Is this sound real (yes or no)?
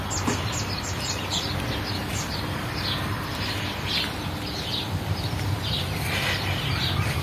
yes